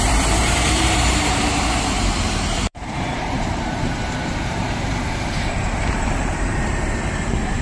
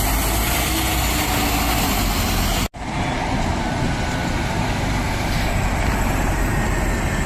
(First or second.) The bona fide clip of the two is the second